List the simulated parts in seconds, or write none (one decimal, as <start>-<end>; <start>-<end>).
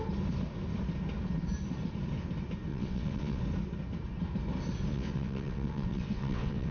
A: 2.7-3.4; 4.9-6.7